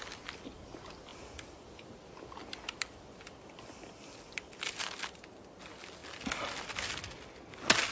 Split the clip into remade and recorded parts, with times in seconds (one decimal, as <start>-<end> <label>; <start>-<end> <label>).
0.0-7.9 recorded